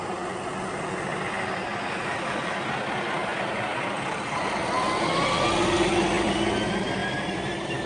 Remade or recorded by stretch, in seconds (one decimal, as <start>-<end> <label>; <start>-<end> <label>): 0.0-7.0 recorded; 7.0-7.9 remade